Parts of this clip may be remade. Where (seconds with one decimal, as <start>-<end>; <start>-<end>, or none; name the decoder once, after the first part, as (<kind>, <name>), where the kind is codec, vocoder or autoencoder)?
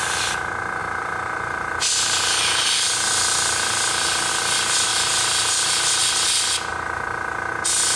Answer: 0.8-4.3 (vocoder, BigVGAN v2); 4.9-6.0; 6.7-7.5